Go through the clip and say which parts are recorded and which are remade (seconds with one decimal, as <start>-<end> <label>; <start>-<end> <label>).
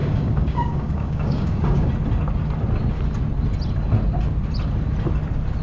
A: 0.0-1.9 remade; 1.9-5.6 recorded